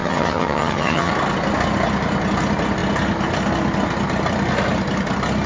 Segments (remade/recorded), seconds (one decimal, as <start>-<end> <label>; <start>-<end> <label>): 0.0-1.1 remade; 1.1-5.5 recorded